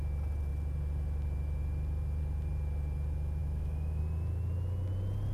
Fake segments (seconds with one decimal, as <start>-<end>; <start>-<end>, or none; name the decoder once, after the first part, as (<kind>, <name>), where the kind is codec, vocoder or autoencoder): 3.4-4.0 (autoencoder, DAC-VAE)